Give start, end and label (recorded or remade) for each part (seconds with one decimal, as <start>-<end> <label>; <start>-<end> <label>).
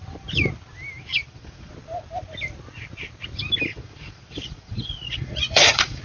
0.0-1.1 recorded; 1.1-1.7 remade; 1.7-3.7 recorded; 3.7-6.0 remade